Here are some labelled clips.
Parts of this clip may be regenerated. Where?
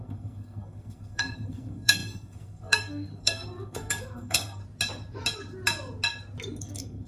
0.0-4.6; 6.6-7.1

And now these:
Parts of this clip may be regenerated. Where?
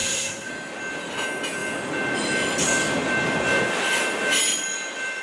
0.0-0.5